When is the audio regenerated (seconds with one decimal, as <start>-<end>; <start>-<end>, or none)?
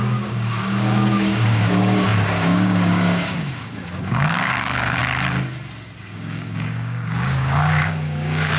0.0-5.0; 6.0-8.6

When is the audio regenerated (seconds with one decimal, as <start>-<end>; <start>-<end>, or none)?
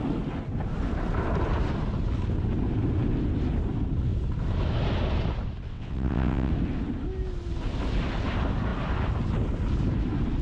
5.7-6.5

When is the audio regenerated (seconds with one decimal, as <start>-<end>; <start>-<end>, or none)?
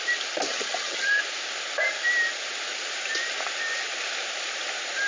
0.5-1.2